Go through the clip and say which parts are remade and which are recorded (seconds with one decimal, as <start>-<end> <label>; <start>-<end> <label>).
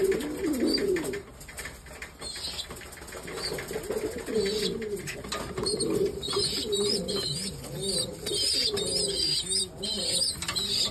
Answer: 0.0-10.9 recorded